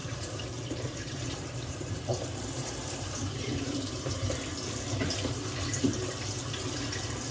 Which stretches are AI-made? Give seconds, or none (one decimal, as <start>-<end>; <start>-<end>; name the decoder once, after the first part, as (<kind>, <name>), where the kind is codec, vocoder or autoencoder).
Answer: 0.0-4.3 (vocoder, BigVGAN v2)